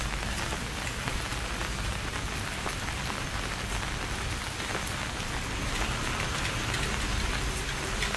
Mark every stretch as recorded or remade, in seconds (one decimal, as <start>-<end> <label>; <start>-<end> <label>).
0.0-8.2 recorded